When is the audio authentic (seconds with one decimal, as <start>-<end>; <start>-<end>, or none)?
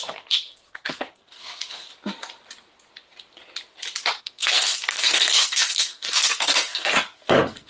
1.9-4.2